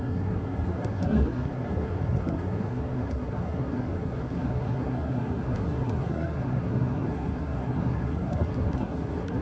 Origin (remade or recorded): remade